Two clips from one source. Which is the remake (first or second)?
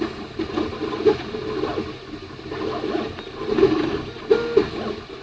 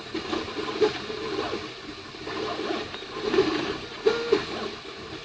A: second